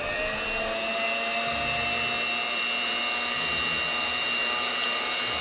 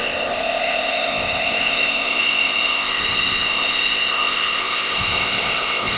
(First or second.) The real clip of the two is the first